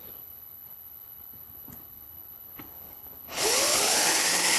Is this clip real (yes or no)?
no